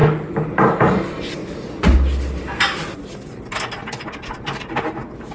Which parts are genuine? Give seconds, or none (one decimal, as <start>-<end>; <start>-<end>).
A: 0.0-5.3